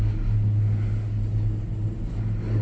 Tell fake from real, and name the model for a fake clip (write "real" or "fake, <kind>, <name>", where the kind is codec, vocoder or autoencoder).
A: real